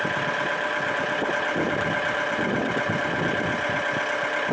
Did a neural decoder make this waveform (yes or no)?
no